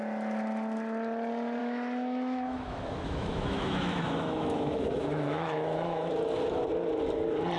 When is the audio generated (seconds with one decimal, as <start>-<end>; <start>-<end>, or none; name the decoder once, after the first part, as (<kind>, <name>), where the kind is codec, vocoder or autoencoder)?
1.6-6.1 (autoencoder, DAC-VAE)